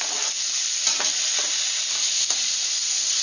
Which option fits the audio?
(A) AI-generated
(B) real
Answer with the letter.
B